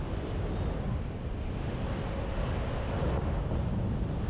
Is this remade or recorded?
recorded